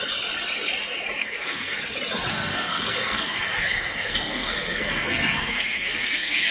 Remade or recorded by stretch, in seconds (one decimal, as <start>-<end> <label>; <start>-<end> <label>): 0.0-1.2 recorded; 1.2-1.8 remade; 1.8-2.3 recorded; 2.3-6.5 remade